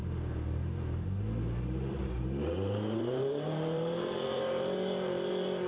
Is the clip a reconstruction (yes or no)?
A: yes